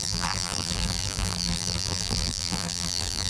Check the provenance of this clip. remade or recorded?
remade